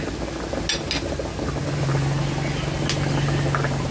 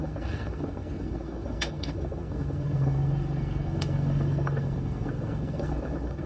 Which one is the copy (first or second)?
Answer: second